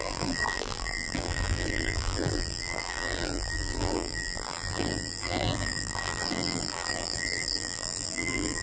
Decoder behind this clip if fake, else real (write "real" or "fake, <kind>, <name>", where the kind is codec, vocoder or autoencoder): fake, vocoder, BigVGAN v2